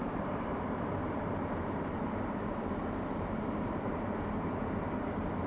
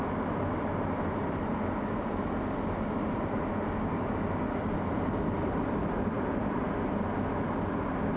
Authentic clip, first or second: second